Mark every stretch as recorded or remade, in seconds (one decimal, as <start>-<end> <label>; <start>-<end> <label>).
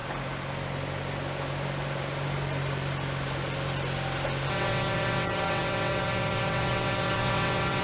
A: 0.0-4.5 recorded; 4.5-7.8 remade